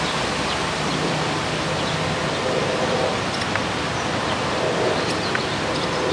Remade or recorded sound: recorded